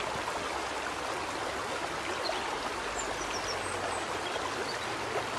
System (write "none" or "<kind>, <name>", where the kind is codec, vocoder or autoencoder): none